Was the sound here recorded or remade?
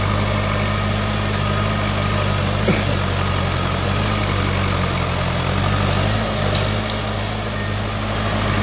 recorded